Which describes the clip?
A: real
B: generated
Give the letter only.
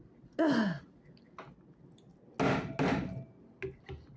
A